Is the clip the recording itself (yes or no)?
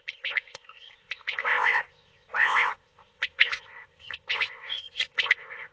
no